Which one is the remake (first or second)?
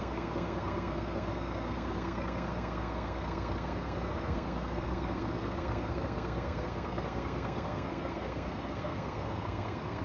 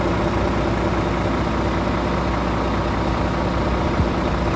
first